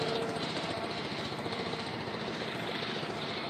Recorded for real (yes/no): no